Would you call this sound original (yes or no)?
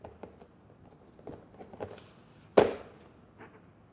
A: yes